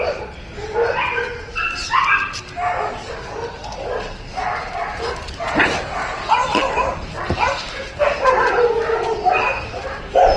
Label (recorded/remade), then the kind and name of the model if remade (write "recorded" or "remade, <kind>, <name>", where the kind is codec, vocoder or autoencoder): recorded